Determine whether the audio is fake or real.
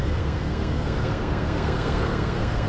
fake